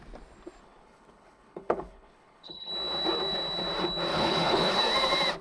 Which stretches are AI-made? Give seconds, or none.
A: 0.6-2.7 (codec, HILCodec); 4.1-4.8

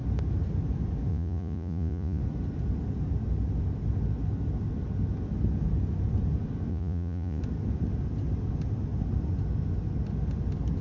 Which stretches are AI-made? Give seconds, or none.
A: 1.1-2.2 (vocoder, Vocos); 6.7-7.4

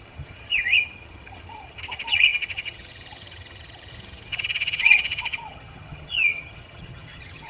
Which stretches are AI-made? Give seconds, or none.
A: 0.0-7.5 (vocoder, HiFi-GAN)

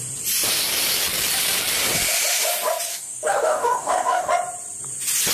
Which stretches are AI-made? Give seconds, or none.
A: 2.9-4.3 (codec, DAC)

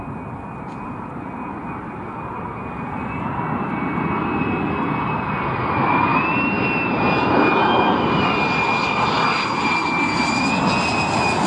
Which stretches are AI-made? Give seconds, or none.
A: none

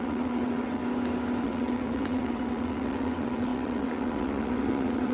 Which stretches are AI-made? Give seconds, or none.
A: 0.0-0.8 (vocoder, WaveNeXt); 1.4-5.1

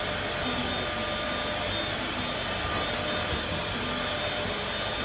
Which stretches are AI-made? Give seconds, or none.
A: none

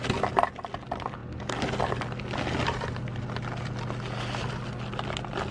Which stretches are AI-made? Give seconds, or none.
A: none